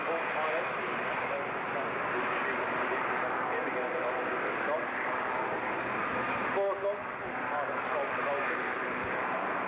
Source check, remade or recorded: recorded